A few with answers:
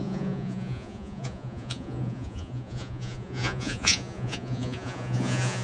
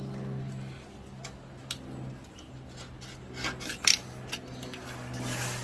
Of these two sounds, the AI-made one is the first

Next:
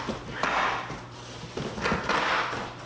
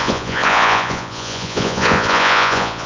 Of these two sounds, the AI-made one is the second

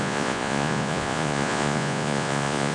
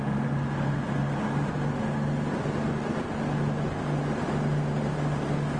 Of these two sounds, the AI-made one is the first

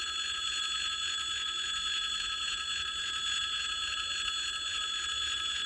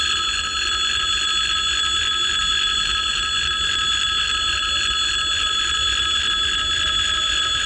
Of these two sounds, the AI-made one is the first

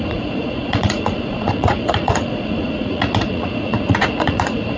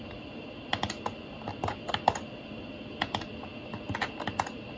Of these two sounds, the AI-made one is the first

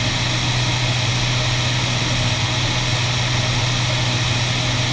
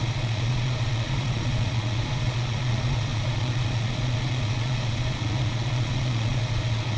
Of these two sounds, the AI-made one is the second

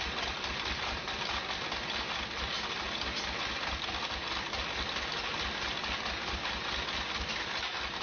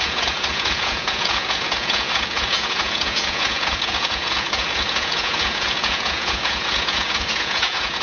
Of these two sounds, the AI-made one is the second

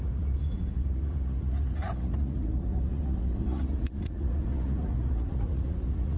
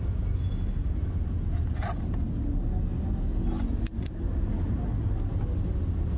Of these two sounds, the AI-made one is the first